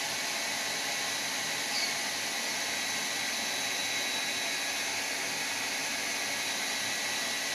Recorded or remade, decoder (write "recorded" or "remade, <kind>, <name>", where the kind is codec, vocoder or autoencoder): recorded